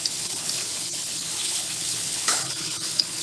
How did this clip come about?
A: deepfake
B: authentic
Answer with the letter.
A